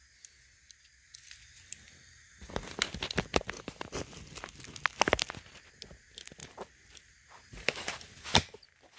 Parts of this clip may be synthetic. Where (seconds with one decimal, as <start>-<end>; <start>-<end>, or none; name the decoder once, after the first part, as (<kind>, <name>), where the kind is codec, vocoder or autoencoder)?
6.4-7.3 (vocoder, BigVGAN v2)